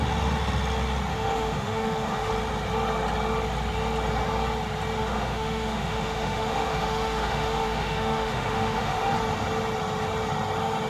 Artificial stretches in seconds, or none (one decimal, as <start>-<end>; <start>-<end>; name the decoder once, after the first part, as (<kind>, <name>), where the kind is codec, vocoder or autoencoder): 1.1-2.3 (autoencoder, DAC-VAE); 5.0-9.1